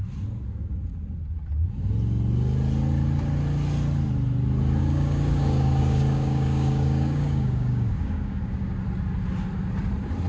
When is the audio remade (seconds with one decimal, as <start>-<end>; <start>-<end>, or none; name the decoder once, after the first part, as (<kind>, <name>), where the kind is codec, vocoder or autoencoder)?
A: 4.8-8.8 (codec, DAC)